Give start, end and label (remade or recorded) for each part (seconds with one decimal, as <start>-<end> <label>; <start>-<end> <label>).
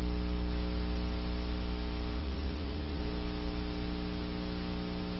0.0-2.2 recorded; 2.2-3.0 remade; 3.0-5.2 recorded